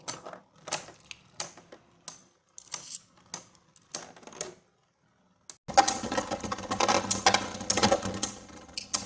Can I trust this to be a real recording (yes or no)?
yes